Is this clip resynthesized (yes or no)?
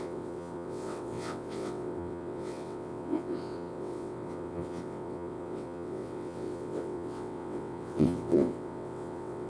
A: yes